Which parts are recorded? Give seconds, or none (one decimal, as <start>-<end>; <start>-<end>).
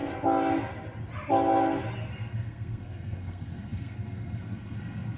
0.0-2.1